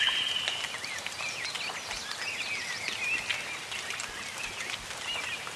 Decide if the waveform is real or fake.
real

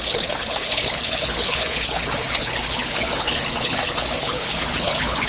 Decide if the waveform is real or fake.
fake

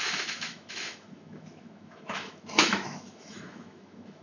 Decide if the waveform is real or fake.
fake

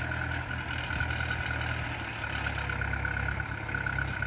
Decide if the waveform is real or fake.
real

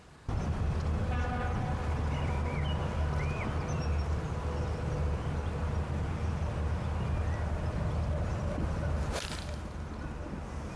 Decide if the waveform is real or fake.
real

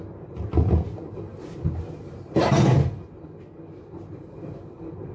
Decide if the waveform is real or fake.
real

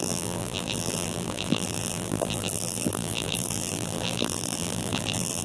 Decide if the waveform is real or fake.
fake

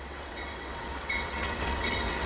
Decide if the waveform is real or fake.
fake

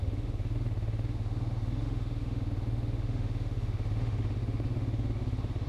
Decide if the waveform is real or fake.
fake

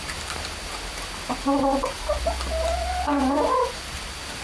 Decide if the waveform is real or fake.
real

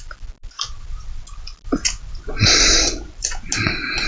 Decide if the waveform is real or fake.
real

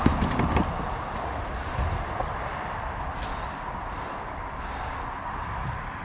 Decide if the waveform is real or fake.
real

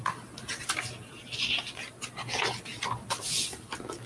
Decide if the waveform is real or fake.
real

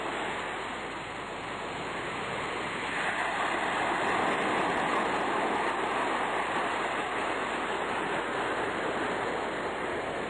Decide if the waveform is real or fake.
real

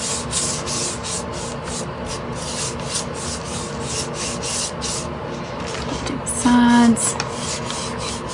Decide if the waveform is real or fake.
real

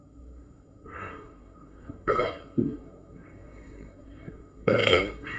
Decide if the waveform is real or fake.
fake